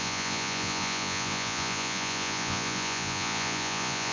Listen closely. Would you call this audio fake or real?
fake